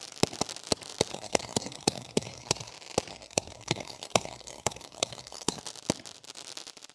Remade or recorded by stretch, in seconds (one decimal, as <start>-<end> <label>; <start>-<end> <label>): 0.0-1.1 recorded; 1.1-2.7 remade; 2.7-3.1 recorded; 3.1-5.6 remade; 5.6-6.9 recorded